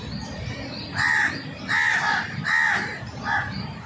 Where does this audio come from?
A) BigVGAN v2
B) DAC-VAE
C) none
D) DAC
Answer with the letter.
C